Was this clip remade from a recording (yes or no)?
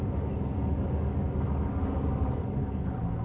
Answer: yes